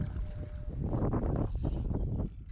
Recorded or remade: recorded